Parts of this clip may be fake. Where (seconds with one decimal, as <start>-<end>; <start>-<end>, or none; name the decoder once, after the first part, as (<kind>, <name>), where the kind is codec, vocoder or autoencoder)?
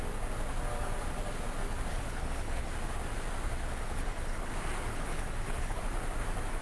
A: 1.9-2.7 (codec, HILCodec); 3.6-4.5; 4.9-5.8